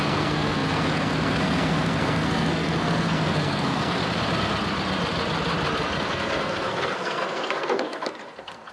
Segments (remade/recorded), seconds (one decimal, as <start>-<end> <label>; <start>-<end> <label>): 0.0-4.0 remade; 4.0-6.1 recorded; 6.1-8.7 remade